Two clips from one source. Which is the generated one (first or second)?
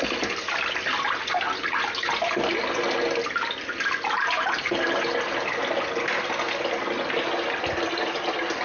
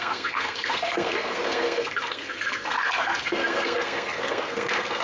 second